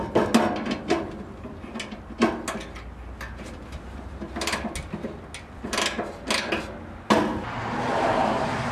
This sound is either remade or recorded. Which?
recorded